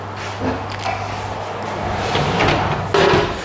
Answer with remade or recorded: recorded